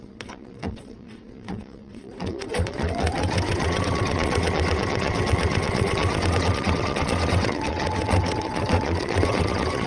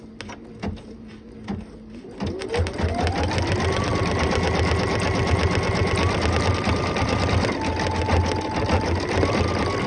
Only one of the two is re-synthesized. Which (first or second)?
first